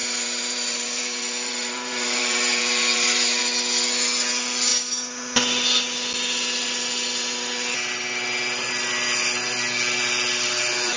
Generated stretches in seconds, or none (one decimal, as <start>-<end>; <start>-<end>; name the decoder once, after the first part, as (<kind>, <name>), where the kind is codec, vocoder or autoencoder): 0.0-3.4 (vocoder, BigVGAN v2)

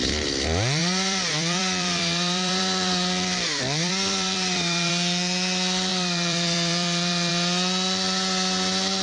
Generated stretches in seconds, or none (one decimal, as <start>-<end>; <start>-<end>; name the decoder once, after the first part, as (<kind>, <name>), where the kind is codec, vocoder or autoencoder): 0.8-4.9 (vocoder, BigVGAN v2); 5.9-7.3

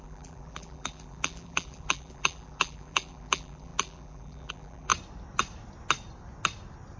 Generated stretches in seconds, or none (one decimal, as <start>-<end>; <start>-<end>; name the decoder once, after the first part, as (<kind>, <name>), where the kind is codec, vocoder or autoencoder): 0.0-4.9 (vocoder, BigVGAN v2)